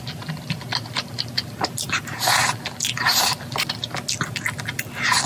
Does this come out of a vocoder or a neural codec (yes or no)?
no